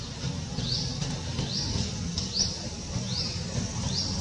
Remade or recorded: recorded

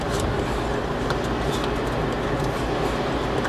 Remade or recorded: recorded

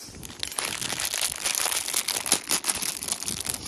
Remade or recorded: recorded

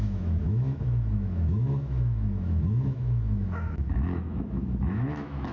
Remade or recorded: remade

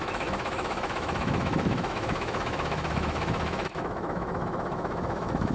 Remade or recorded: remade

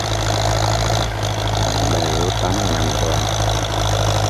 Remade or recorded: recorded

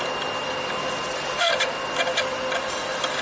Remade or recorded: recorded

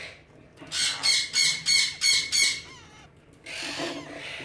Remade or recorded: recorded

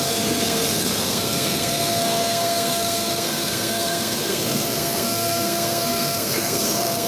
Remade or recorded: remade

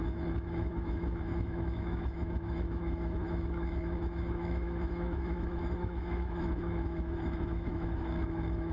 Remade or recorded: remade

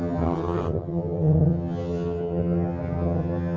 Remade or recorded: remade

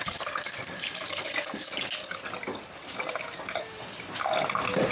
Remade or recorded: recorded